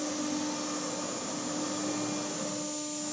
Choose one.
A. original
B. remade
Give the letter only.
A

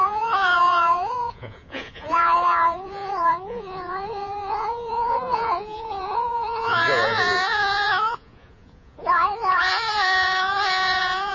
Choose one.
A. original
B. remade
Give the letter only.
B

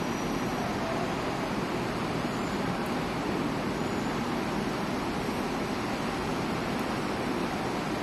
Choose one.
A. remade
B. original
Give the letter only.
B